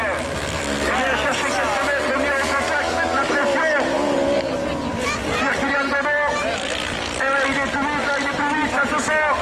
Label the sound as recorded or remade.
recorded